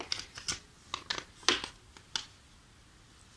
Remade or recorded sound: recorded